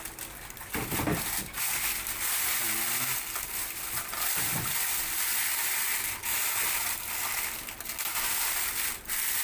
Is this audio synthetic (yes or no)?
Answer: no